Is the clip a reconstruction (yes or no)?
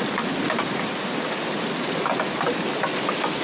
no